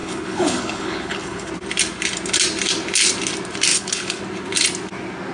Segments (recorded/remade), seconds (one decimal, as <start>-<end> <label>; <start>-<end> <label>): 0.0-1.5 remade; 1.5-3.7 recorded; 3.7-4.2 remade; 4.2-5.3 recorded